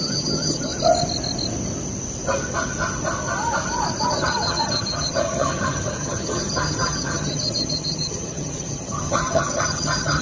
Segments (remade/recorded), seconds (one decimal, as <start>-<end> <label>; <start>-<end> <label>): 0.0-0.7 remade; 0.7-4.0 recorded; 4.0-10.2 remade